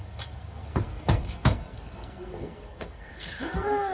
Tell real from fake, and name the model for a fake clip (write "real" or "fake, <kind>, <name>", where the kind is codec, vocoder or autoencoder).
fake, codec, SNAC